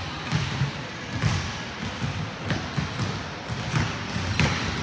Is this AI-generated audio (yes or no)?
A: no